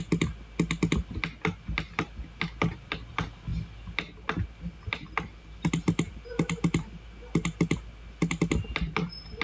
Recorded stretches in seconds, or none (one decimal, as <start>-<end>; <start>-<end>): 0.0-9.4